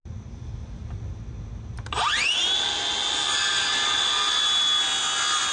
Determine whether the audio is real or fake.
real